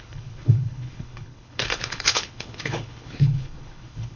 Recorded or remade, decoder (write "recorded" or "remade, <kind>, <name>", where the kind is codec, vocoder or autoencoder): remade, codec, HILCodec